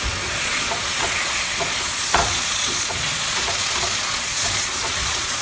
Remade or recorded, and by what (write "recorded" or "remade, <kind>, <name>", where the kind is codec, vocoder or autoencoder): remade, vocoder, Vocos